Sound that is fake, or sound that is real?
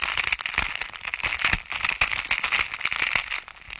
real